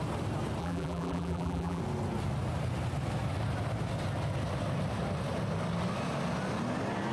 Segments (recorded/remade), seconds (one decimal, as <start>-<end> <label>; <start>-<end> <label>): 0.0-0.6 recorded; 0.6-1.8 remade; 1.8-7.1 recorded